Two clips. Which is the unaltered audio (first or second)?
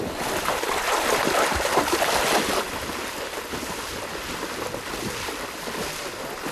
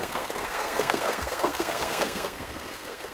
first